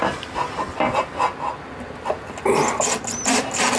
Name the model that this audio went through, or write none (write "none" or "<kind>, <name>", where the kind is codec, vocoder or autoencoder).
none